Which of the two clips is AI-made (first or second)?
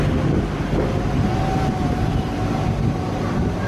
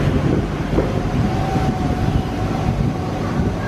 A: second